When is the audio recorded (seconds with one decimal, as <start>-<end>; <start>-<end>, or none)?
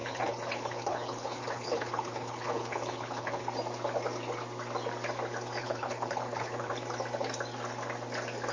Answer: 3.4-5.6; 6.7-8.5